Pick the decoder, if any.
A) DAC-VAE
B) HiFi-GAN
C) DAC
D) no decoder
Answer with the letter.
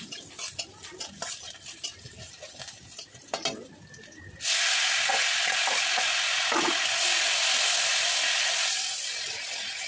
D